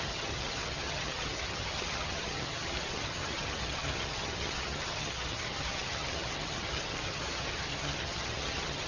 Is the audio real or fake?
fake